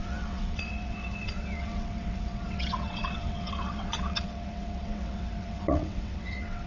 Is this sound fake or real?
fake